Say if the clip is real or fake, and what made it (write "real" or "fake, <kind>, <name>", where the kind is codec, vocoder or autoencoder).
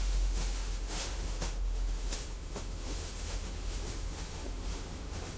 fake, autoencoder, DAC-VAE